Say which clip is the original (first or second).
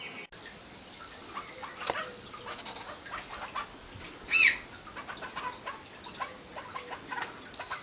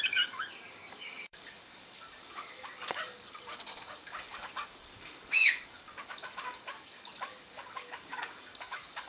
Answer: first